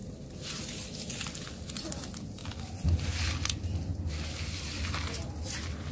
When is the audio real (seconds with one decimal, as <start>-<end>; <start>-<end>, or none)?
0.0-5.9

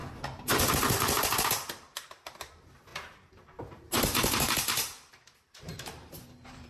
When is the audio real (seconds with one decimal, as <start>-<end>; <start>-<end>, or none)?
0.0-0.7

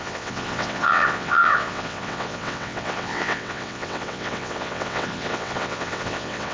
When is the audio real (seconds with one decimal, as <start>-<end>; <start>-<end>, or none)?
none